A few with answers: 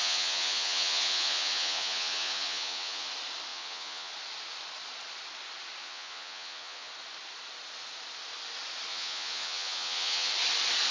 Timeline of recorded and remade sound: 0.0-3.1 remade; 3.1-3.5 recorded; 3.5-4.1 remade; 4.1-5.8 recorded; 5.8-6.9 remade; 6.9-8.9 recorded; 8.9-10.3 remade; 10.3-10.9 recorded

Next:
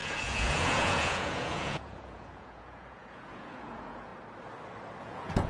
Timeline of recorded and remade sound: 0.0-4.1 remade; 4.1-5.0 recorded; 5.0-5.5 remade

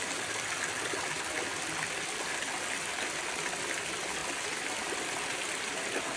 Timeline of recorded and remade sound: 0.0-6.2 recorded

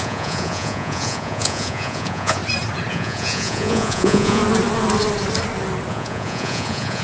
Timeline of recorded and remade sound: 0.0-2.4 remade; 2.4-2.9 recorded; 2.9-4.4 remade; 4.4-5.9 recorded; 5.9-7.0 remade

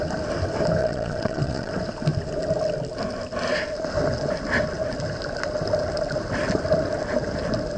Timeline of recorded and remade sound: 0.0-0.8 recorded; 0.8-1.7 remade; 1.7-7.8 recorded